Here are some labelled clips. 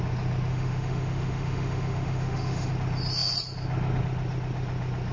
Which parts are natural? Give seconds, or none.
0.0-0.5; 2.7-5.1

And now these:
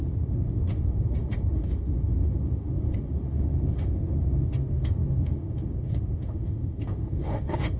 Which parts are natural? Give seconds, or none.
none

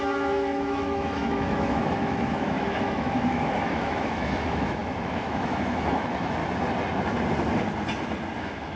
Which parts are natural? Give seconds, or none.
6.4-8.4

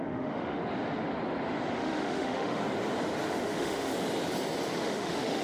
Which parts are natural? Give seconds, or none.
0.6-1.7; 2.6-3.3; 3.9-4.8

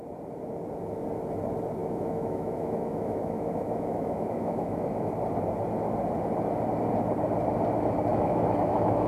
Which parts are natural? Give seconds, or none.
0.0-1.8; 5.1-8.1

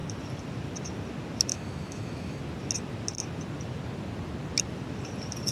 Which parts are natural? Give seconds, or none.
0.0-1.5; 2.4-5.5